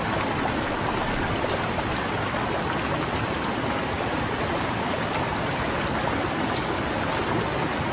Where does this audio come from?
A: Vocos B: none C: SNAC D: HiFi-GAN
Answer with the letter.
B